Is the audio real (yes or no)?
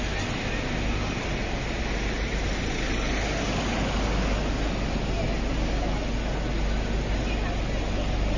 yes